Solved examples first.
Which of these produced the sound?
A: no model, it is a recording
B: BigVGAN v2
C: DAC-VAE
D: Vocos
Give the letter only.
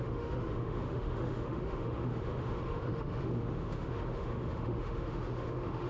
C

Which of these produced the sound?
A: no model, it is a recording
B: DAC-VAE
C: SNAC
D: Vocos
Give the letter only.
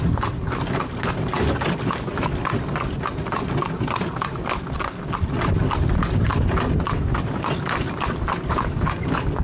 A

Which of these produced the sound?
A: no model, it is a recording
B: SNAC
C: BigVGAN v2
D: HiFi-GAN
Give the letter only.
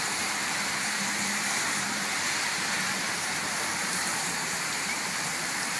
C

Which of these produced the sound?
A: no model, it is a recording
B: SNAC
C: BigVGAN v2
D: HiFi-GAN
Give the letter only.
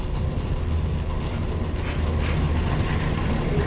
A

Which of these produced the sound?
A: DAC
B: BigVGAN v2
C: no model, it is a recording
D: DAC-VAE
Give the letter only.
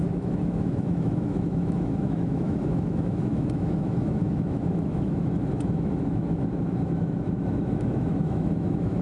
D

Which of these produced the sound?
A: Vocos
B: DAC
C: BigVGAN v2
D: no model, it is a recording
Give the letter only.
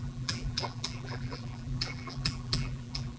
C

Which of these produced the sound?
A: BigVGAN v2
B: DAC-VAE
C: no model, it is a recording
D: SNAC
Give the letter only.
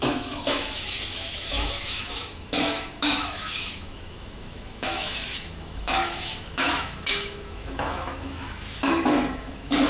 B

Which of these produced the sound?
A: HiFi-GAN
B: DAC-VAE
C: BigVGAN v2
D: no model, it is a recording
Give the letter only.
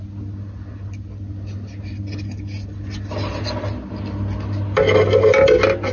D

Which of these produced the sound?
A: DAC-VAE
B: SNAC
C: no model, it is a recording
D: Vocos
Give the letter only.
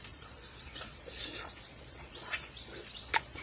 D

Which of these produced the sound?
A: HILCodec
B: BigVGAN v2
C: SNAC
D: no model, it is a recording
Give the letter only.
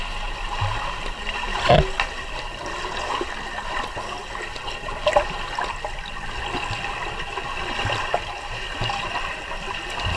D